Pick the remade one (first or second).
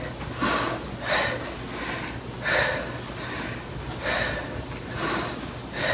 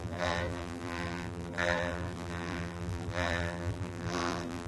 second